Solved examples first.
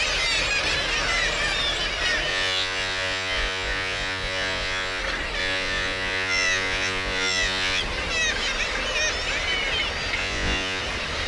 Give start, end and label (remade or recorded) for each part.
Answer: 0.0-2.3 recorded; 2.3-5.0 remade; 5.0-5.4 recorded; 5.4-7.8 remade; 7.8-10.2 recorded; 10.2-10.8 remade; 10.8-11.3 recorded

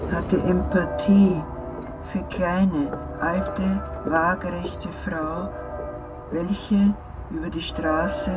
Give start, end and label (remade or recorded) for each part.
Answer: 0.0-8.4 recorded

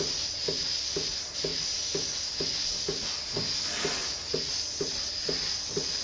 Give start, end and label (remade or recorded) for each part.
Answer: 0.0-4.0 recorded; 4.0-4.5 remade; 4.5-6.0 recorded

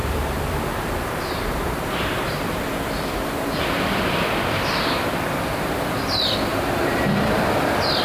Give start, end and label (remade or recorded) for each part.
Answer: 0.0-6.5 remade; 6.5-8.0 recorded

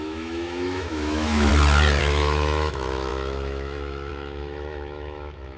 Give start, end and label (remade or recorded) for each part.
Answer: 0.0-1.5 remade; 1.5-2.0 recorded; 2.0-5.6 remade